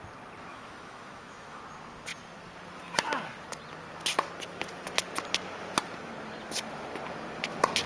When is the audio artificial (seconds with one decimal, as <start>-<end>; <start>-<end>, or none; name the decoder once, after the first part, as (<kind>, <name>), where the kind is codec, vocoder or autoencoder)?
0.5-1.6 (autoencoder, DAC-VAE)